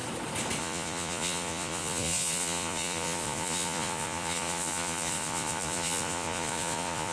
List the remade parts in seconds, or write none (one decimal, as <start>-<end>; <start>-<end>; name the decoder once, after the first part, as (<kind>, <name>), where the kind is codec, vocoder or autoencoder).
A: 0.6-7.1 (vocoder, Vocos)